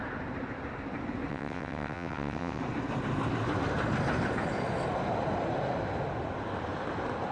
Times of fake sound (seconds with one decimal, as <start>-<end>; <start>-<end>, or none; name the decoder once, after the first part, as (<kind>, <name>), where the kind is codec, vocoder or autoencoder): 1.3-2.6 (vocoder, WaveNeXt)